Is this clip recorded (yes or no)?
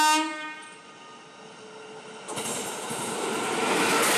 yes